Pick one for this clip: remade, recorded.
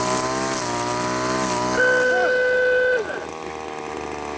recorded